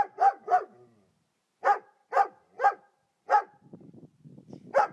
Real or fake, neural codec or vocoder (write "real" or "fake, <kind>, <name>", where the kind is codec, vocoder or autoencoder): real